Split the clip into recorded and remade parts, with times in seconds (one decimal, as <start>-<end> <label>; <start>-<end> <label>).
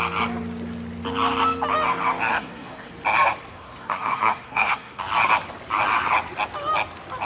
0.0-2.3 recorded; 2.3-2.9 remade; 2.9-3.5 recorded; 3.5-5.0 remade; 5.0-7.3 recorded